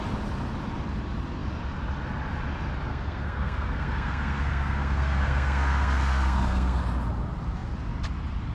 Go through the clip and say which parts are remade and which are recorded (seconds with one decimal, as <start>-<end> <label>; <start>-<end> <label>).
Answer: 0.0-2.9 recorded; 2.9-6.8 remade; 6.8-8.5 recorded